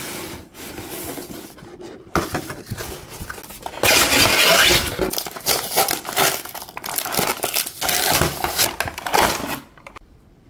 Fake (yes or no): no